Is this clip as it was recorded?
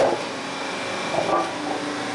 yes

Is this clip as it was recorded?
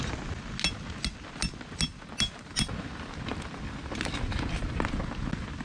yes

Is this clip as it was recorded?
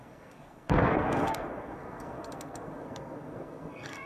no